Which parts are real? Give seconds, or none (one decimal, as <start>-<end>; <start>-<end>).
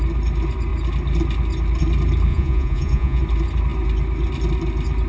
0.0-2.3; 3.2-5.1